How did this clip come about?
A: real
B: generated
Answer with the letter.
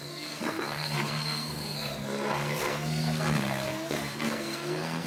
B